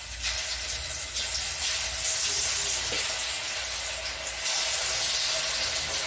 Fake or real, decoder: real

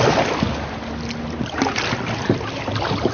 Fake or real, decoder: real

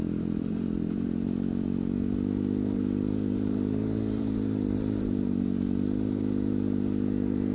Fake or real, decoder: fake, vocoder, BigVGAN v2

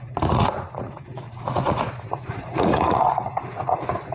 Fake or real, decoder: fake, vocoder, Vocos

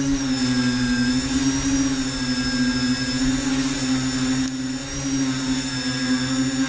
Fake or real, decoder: real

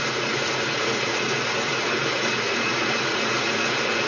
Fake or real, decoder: fake, vocoder, Vocos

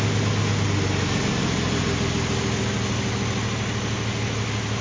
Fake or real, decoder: real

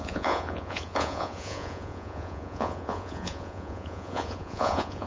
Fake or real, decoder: fake, vocoder, Vocos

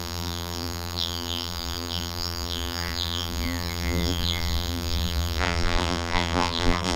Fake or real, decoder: fake, vocoder, BigVGAN v2